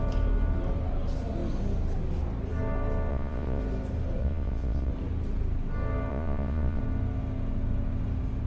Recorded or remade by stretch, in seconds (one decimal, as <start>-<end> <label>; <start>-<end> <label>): 0.0-3.1 recorded; 3.1-3.6 remade; 3.6-4.2 recorded; 4.2-4.9 remade; 4.9-6.1 recorded; 6.1-6.8 remade; 6.8-8.5 recorded